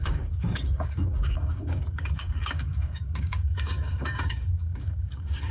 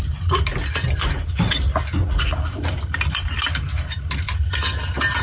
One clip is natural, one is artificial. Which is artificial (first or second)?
first